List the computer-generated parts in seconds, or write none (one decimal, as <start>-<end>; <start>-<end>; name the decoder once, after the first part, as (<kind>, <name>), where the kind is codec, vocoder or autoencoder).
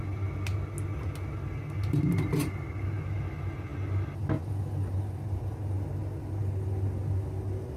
none